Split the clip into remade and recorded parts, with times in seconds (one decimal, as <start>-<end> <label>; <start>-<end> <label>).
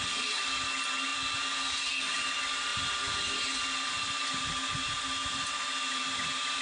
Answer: 0.0-1.1 remade; 1.1-2.0 recorded; 2.0-5.2 remade; 5.2-6.0 recorded; 6.0-6.6 remade